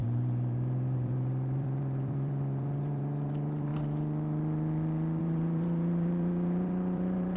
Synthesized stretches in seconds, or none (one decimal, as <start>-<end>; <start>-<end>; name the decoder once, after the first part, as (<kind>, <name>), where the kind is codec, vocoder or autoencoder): 0.0-3.7 (vocoder, BigVGAN v2); 5.2-7.4